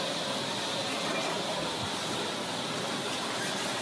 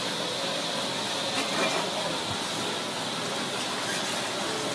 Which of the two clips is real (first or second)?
second